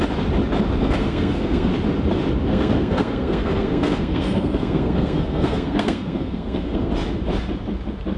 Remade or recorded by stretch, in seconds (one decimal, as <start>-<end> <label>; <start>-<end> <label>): 0.0-0.8 recorded; 0.8-1.7 remade; 1.7-2.5 recorded; 2.5-6.9 remade; 6.9-8.2 recorded

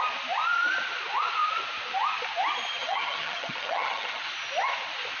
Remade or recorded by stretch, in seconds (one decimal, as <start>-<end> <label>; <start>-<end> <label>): 0.0-2.8 recorded; 2.8-4.3 remade; 4.3-5.2 recorded

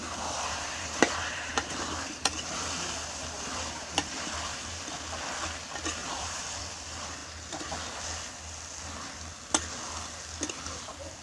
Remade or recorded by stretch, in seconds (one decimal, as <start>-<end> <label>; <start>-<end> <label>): 0.0-4.8 remade; 4.8-6.0 recorded; 6.0-6.6 remade; 6.6-11.2 recorded

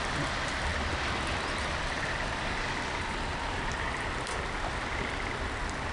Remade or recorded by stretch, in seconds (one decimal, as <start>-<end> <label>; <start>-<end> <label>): 0.0-5.9 recorded

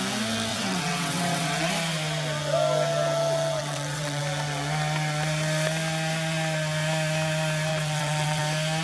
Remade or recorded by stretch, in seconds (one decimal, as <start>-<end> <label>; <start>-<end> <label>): 0.0-0.5 recorded; 0.5-1.7 remade; 1.7-3.6 recorded; 3.6-4.2 remade; 4.2-7.7 recorded; 7.7-8.4 remade; 8.4-8.8 recorded

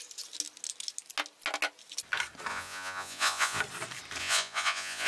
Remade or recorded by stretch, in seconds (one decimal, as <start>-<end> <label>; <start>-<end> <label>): 0.0-2.5 recorded; 2.5-3.6 remade; 3.6-4.2 recorded; 4.2-5.1 remade

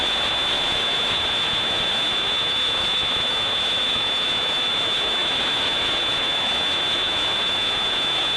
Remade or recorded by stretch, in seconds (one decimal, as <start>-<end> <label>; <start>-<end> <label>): 0.0-8.4 remade